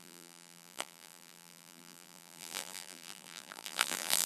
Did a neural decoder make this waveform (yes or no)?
yes